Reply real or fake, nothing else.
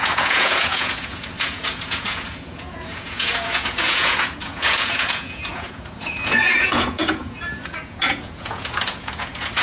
fake